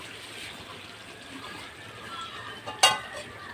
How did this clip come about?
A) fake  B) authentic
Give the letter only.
B